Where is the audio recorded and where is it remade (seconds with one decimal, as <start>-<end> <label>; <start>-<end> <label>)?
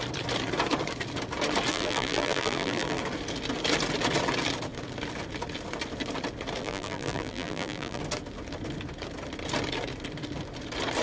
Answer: 0.0-1.7 recorded; 1.7-3.0 remade; 3.0-6.6 recorded; 6.6-8.0 remade; 8.0-11.0 recorded